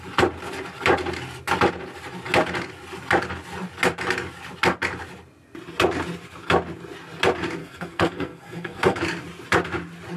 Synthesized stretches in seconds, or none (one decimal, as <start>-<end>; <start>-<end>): 7.6-9.0